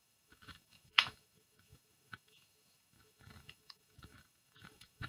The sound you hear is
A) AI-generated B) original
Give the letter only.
A